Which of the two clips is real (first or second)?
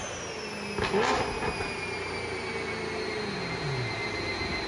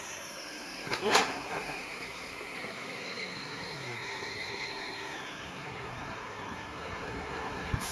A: first